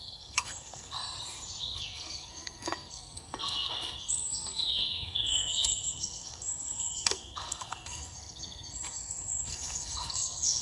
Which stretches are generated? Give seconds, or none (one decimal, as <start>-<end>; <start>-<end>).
0.0-1.0; 1.6-10.6